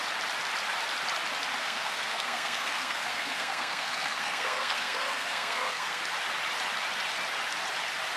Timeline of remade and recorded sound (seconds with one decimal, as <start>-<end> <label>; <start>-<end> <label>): 0.0-1.6 recorded; 1.6-6.0 remade; 6.0-8.2 recorded